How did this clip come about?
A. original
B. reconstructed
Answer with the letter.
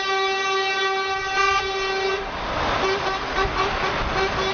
A